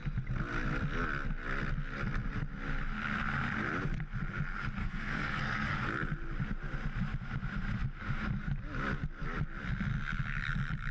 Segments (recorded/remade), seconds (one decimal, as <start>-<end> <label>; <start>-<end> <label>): 0.0-4.8 recorded; 4.8-5.7 remade; 5.7-10.9 recorded